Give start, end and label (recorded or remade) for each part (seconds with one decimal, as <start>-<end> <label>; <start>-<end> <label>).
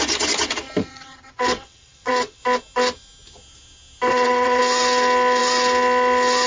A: 0.0-0.8 recorded; 0.8-2.4 remade; 2.4-4.1 recorded; 4.1-4.6 remade; 4.6-6.5 recorded